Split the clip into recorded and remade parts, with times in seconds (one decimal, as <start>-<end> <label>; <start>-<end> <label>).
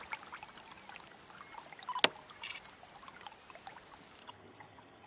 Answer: 0.0-4.2 recorded; 4.2-5.1 remade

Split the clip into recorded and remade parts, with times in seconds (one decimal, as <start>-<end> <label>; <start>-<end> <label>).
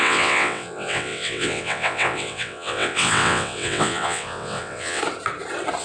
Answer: 0.0-5.0 remade; 5.0-5.8 recorded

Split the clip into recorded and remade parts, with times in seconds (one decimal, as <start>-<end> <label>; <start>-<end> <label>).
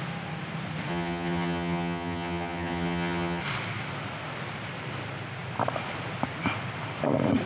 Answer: 0.0-0.9 recorded; 0.9-3.4 remade; 3.4-7.5 recorded